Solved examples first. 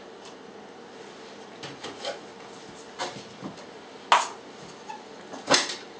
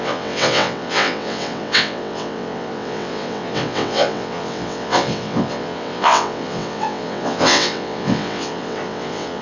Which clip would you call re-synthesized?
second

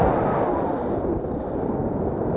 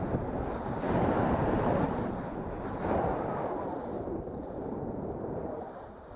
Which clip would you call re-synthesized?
second